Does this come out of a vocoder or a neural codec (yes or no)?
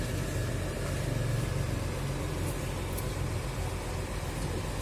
no